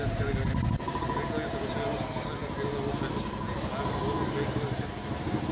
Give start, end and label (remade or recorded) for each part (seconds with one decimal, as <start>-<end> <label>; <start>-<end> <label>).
0.0-5.5 recorded